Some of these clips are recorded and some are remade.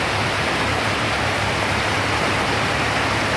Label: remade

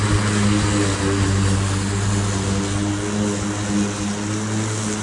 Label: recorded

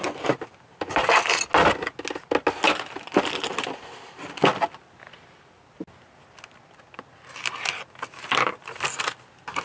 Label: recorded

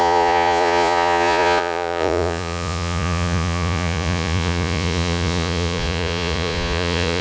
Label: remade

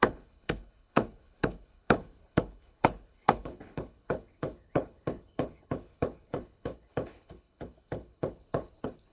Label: remade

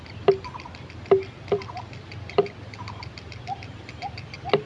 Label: recorded